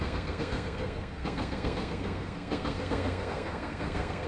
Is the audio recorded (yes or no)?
no